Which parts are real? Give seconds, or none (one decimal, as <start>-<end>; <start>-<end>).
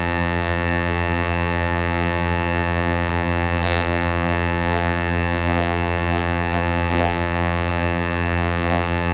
none